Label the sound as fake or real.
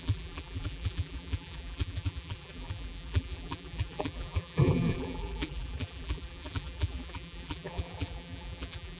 fake